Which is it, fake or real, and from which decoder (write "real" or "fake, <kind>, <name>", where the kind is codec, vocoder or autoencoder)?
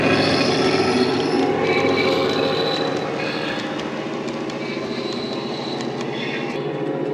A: real